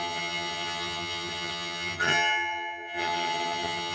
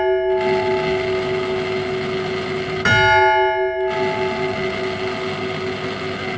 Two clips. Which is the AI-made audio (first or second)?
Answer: first